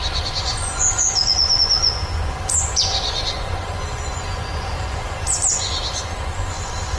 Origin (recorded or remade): remade